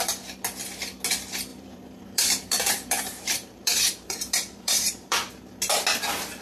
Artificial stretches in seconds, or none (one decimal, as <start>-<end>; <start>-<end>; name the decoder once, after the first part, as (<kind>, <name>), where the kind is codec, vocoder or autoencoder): 1.5-5.3 (vocoder, BigVGAN v2)